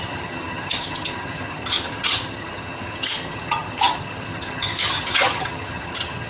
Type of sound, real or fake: fake